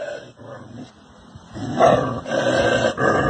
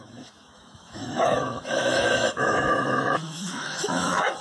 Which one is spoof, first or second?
second